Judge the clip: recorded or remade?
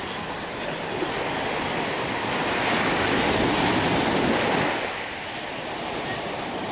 recorded